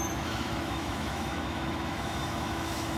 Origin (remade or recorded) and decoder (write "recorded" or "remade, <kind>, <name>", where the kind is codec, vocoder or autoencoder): remade, autoencoder, DAC-VAE